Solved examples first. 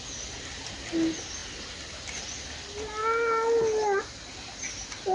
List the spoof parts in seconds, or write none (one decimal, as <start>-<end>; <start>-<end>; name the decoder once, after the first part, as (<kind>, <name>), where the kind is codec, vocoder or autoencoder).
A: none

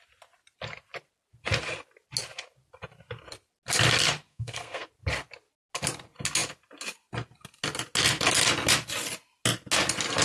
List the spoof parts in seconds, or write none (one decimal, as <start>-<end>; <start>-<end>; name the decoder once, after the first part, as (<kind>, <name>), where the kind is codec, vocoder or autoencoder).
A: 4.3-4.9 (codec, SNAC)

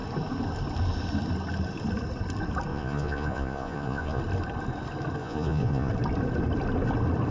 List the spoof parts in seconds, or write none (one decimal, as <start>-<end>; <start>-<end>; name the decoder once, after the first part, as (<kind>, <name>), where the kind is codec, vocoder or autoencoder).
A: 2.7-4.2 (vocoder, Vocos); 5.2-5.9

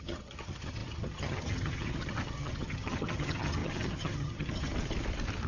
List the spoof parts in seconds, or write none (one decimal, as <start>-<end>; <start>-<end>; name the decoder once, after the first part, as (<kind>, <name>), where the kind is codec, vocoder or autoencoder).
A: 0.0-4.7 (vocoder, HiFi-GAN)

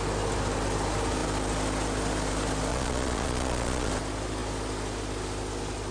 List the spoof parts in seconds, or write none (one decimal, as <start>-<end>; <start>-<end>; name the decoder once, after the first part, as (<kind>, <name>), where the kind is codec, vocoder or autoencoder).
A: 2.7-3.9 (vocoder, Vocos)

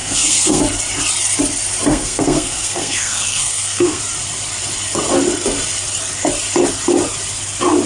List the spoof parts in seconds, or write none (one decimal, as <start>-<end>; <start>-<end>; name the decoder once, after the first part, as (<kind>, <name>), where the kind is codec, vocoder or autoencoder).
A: 0.0-0.6 (codec, SNAC); 1.9-4.0